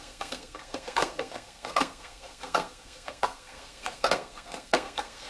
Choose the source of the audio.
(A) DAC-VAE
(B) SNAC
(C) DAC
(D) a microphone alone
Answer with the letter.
B